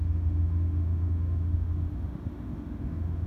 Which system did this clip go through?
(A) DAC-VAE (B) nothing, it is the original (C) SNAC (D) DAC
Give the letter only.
A